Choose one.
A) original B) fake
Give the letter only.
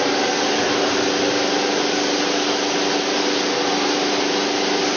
A